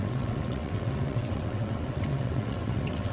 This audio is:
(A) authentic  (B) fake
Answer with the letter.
B